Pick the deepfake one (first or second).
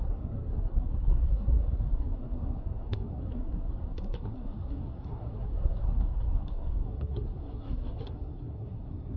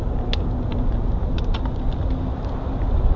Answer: first